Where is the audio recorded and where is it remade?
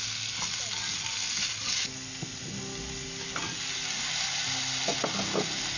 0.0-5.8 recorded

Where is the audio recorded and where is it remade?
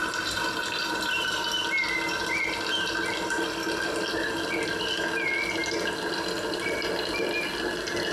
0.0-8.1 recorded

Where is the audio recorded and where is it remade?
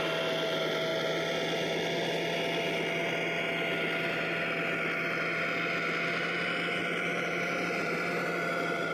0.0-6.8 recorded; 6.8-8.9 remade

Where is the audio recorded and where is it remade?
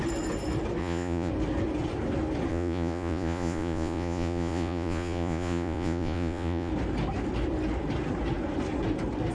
0.0-0.8 recorded; 0.8-1.3 remade; 1.3-2.5 recorded; 2.5-6.7 remade; 6.7-9.3 recorded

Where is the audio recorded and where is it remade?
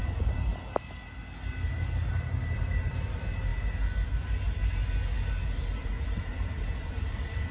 0.0-0.5 remade; 0.5-2.1 recorded; 2.1-3.5 remade; 3.5-5.6 recorded; 5.6-7.5 remade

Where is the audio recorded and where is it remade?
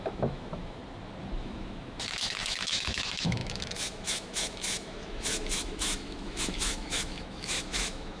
0.0-0.8 remade; 0.8-1.4 recorded; 1.4-8.2 remade